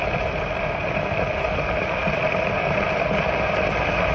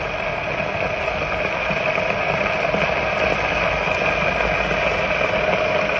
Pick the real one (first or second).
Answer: second